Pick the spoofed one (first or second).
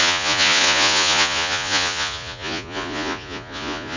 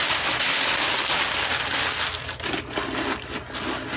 first